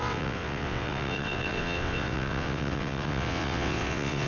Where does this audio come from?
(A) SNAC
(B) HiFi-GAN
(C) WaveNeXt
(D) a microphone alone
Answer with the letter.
C